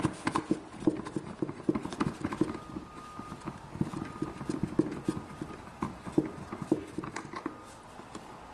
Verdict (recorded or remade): recorded